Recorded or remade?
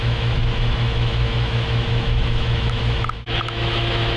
remade